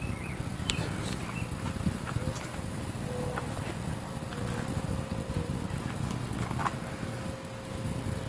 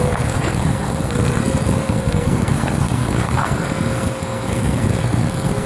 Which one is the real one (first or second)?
first